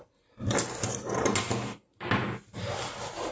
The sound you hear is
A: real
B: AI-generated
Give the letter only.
A